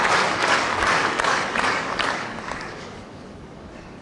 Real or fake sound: fake